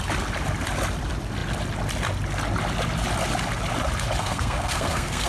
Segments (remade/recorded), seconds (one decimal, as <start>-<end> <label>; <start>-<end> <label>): 0.0-4.2 recorded; 4.2-5.3 remade